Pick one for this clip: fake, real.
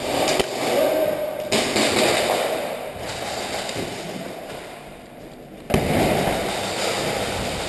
real